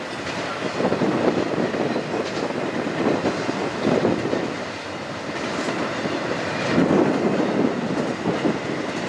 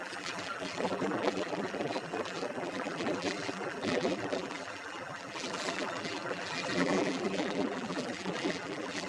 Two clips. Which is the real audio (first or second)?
first